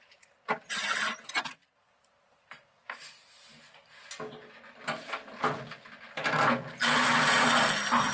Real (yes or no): yes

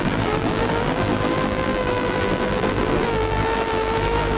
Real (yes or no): no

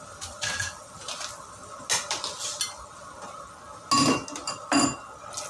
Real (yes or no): yes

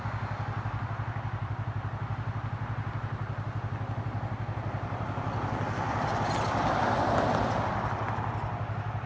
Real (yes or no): yes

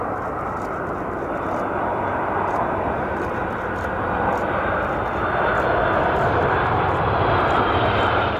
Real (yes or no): yes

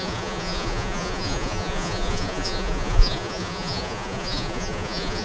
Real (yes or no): no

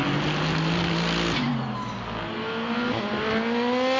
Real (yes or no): yes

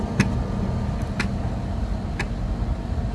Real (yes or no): yes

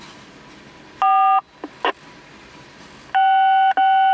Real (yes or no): yes